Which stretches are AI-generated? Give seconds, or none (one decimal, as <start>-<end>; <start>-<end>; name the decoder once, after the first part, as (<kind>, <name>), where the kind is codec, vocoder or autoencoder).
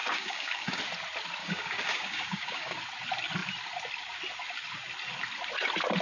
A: 0.0-0.8 (codec, DAC); 1.4-2.8